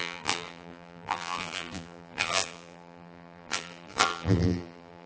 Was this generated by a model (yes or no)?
yes